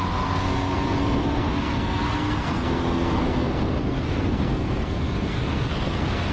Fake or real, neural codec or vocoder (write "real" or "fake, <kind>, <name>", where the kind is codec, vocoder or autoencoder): fake, codec, SNAC